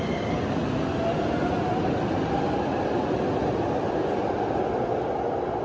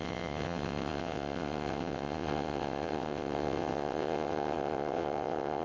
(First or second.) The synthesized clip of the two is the second